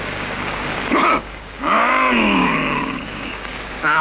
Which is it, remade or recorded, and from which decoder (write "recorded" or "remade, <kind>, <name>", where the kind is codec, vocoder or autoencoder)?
remade, codec, DAC